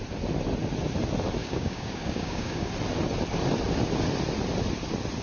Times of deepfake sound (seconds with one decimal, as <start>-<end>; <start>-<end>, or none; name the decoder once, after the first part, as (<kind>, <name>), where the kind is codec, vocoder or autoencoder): 1.4-2.7 (codec, DAC)